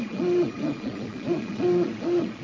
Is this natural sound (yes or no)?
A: no